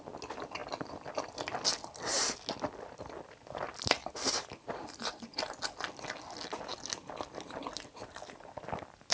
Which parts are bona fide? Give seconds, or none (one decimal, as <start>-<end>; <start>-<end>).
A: 0.0-4.0; 5.6-9.1